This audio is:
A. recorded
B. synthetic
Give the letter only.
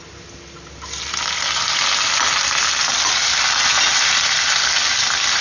A